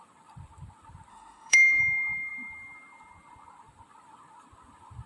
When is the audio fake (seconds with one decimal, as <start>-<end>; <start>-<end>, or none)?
1.1-1.8